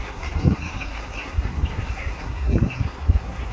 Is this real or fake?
fake